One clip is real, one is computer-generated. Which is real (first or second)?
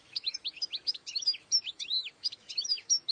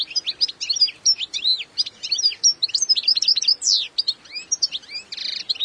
second